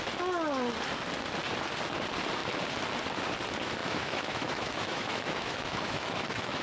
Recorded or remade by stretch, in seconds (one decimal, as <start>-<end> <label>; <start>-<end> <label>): 0.0-3.8 recorded; 3.8-6.6 remade